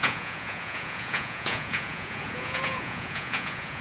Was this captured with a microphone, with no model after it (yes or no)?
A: no